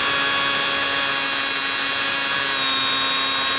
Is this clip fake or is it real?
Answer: real